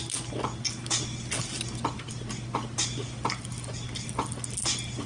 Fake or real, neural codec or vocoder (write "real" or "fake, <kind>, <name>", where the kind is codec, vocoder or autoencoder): real